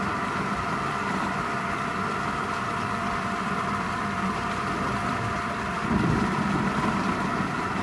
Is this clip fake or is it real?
fake